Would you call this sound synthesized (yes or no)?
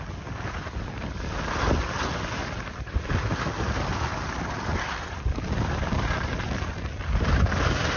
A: no